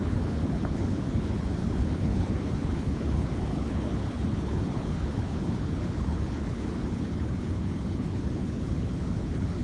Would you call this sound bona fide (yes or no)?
no